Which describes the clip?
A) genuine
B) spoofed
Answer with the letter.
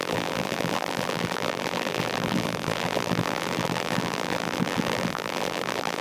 B